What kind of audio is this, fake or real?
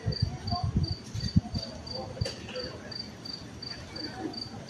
real